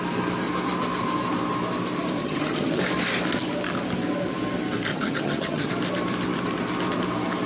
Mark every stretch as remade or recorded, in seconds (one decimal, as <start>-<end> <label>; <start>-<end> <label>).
0.0-2.2 recorded; 2.2-2.8 remade; 2.8-4.9 recorded; 4.9-5.7 remade; 5.7-7.5 recorded